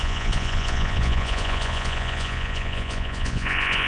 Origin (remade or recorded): remade